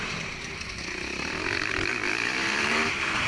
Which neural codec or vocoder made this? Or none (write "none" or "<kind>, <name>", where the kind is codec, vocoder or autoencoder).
vocoder, BigVGAN v2